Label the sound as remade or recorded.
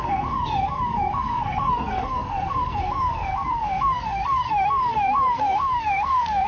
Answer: remade